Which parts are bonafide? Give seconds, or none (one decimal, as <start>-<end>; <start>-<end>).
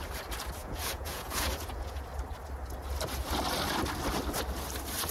0.0-0.6; 2.0-5.1